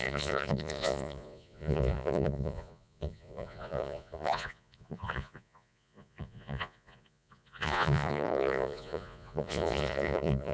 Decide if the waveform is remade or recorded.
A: remade